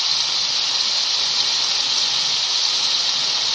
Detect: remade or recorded recorded